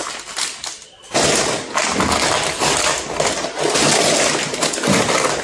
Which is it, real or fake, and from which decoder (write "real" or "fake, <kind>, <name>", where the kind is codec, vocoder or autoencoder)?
real